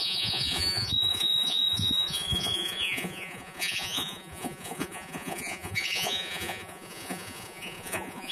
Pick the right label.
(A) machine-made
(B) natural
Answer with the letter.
A